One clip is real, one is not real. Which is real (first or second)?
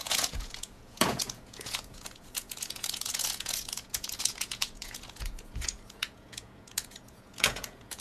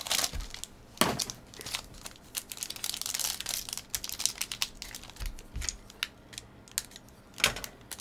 second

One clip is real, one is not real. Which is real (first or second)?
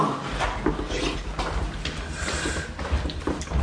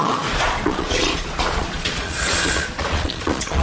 first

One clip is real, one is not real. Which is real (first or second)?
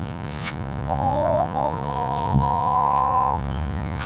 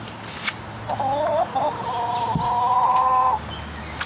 second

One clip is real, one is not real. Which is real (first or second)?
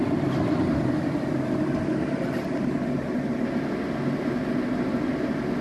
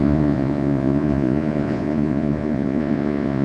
first